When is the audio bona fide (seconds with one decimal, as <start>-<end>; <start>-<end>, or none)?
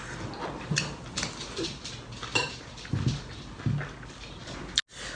0.0-5.2